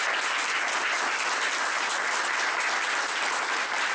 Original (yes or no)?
yes